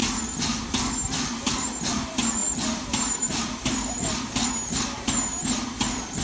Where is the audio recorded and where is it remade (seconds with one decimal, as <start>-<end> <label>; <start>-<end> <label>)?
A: 0.0-2.4 recorded; 2.4-4.3 remade; 4.3-6.2 recorded